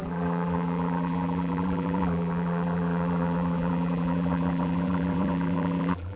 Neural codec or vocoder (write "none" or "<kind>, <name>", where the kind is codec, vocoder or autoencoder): vocoder, BigVGAN v2